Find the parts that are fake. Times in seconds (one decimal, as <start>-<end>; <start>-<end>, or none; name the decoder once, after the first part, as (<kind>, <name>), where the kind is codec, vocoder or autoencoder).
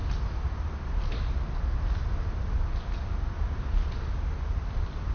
none